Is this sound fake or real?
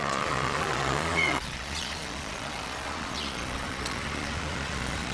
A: fake